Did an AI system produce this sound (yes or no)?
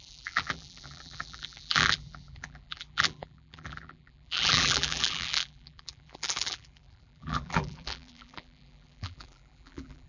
yes